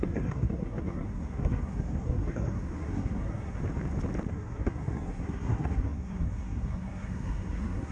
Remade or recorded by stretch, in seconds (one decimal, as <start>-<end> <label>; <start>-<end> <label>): 0.0-3.6 remade; 3.6-4.3 recorded; 4.3-7.9 remade